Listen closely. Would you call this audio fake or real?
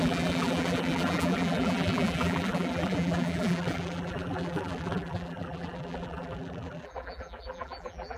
fake